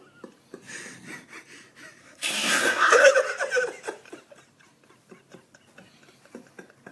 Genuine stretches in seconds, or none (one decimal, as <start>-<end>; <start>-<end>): 0.0-2.0; 3.1-6.9